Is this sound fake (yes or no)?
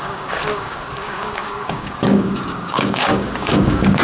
yes